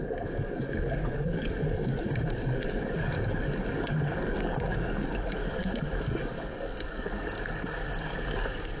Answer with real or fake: fake